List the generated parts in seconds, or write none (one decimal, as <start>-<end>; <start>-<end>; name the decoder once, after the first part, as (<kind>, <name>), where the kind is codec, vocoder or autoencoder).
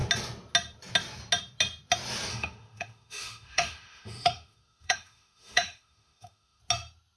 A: 2.3-6.6 (autoencoder, DAC-VAE)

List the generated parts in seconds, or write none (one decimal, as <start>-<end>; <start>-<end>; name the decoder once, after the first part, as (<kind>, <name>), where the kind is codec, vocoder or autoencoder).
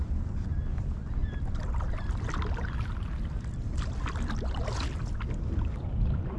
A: none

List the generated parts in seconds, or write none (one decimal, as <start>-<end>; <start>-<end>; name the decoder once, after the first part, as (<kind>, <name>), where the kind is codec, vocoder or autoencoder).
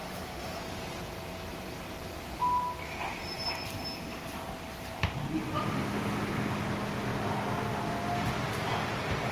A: 0.0-0.6 (autoencoder, DAC-VAE)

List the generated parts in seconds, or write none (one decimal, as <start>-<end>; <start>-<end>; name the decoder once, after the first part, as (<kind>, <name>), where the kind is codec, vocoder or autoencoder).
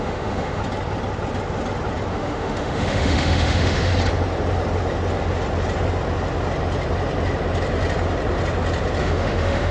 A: 0.0-0.6 (autoencoder, DAC-VAE); 2.1-3.9; 9.0-9.7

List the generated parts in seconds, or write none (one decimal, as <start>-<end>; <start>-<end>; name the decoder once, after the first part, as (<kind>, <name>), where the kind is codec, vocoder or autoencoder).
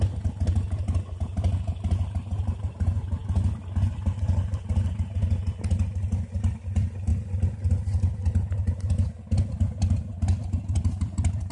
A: none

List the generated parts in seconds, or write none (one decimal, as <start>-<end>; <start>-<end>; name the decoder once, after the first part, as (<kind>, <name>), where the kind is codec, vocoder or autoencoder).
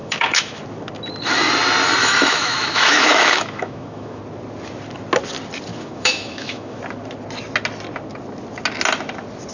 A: 0.0-0.6 (autoencoder, DAC-VAE); 2.0-4.2; 5.7-6.8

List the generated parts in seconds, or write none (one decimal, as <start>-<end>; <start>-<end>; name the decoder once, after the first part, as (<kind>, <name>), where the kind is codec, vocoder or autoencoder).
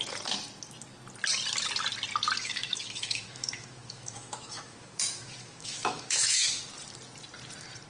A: 2.4-6.6 (autoencoder, DAC-VAE)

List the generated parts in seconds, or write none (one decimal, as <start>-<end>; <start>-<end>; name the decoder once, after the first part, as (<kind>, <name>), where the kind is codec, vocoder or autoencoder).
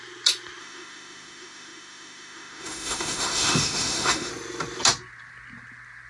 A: 0.6-4.3 (autoencoder, DAC-VAE)